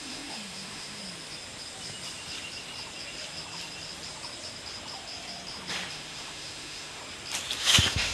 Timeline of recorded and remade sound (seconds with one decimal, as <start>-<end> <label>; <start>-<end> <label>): 0.0-1.0 remade; 1.0-5.9 recorded; 5.9-7.0 remade; 7.0-7.6 recorded; 7.6-8.1 remade